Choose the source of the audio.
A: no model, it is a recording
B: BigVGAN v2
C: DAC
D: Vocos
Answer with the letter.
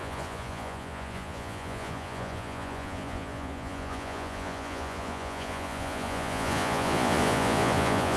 D